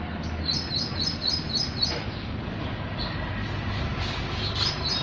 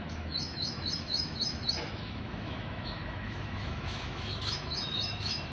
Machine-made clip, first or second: second